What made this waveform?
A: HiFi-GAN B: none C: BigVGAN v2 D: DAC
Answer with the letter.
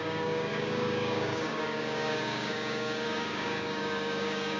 D